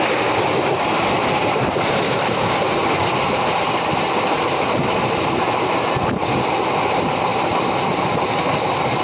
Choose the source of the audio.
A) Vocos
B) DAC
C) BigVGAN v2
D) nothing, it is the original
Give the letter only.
C